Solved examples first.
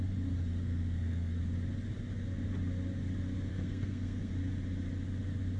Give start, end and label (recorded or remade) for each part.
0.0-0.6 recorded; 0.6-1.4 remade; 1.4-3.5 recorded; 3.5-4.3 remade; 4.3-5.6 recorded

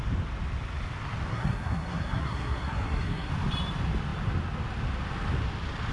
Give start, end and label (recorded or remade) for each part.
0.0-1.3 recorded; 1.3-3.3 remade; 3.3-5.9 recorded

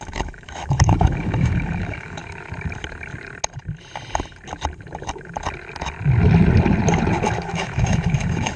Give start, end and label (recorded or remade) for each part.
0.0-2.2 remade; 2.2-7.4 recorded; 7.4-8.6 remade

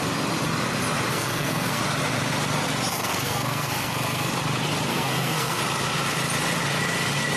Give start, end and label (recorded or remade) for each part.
0.0-1.1 recorded; 1.1-1.8 remade; 1.8-2.9 recorded; 2.9-4.3 remade; 4.3-4.9 recorded; 4.9-5.6 remade; 5.6-7.4 recorded